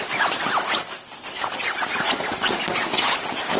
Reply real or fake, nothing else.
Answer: real